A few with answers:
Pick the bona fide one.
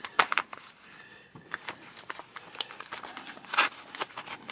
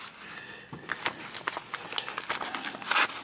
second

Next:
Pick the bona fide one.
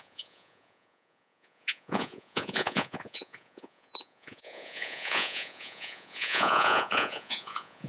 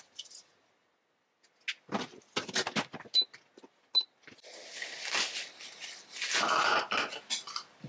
second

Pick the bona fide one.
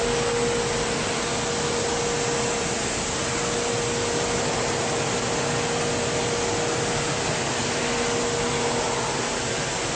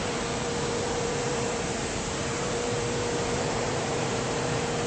first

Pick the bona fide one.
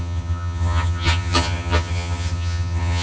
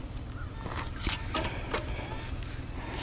second